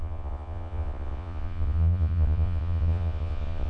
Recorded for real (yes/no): no